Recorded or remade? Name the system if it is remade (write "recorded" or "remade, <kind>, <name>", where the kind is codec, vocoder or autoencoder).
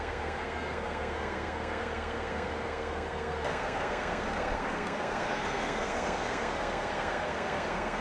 remade, codec, SNAC